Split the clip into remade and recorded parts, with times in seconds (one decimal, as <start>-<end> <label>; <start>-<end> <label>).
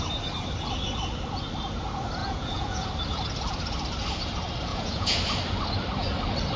0.0-2.2 recorded; 2.2-2.9 remade; 2.9-4.7 recorded; 4.7-5.2 remade; 5.2-6.6 recorded